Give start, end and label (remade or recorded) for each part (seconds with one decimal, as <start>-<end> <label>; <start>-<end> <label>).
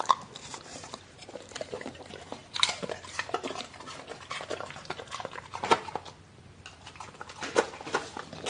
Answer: 0.0-0.7 recorded; 0.7-5.8 remade; 5.8-8.5 recorded